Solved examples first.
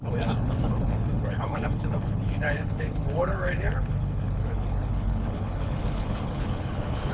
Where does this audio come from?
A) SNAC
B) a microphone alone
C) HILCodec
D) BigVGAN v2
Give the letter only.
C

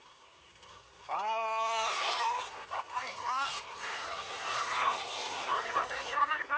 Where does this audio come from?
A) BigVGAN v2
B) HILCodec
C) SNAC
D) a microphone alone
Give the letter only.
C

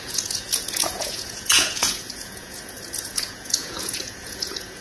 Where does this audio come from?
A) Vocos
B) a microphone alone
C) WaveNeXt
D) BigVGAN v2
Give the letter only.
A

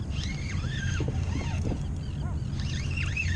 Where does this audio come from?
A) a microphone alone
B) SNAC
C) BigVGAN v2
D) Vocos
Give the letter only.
A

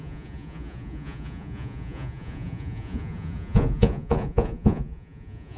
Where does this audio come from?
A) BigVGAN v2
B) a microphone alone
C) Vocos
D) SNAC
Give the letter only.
C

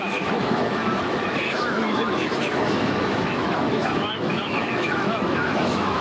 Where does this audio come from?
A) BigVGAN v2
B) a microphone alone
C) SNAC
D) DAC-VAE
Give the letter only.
D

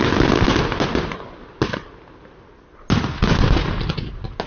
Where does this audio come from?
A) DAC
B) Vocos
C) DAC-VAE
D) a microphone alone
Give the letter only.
D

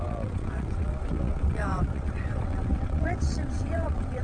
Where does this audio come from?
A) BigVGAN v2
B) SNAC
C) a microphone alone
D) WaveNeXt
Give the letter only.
D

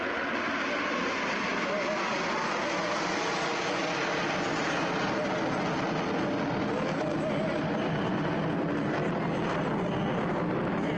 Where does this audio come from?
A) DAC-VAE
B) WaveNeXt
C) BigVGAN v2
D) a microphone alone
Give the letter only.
D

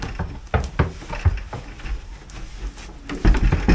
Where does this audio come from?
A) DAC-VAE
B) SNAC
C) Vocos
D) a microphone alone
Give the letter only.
D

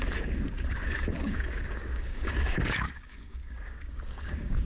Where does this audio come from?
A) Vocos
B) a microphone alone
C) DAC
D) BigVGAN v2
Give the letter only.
C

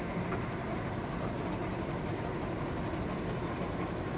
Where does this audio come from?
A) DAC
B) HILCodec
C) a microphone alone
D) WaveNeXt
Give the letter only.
C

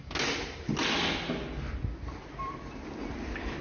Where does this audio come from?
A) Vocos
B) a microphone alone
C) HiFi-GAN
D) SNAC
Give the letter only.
B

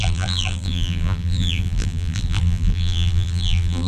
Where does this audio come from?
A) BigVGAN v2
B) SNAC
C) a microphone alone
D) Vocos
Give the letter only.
A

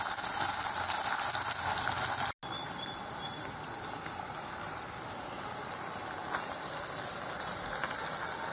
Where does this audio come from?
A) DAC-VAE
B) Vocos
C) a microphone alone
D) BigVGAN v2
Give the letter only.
C